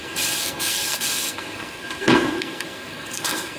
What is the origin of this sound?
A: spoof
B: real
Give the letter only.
A